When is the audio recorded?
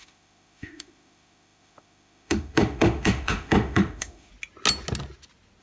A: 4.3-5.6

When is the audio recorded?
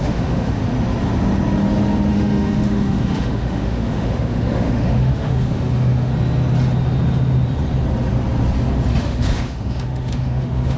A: 0.6-2.1; 6.1-9.0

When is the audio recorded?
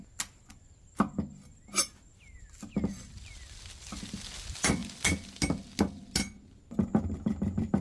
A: 0.0-7.8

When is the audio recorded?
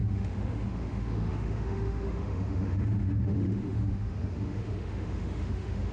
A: none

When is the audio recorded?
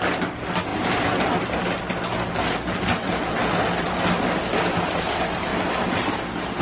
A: 0.0-6.6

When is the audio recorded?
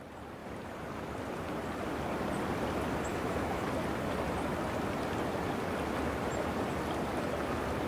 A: 0.0-3.1; 3.6-7.9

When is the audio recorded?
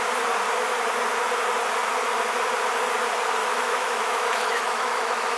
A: 0.0-3.4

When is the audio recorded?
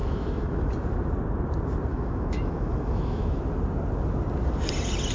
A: 0.7-1.9; 3.4-5.1